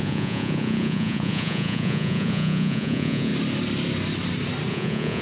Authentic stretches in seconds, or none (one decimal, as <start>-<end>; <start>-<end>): 3.3-4.7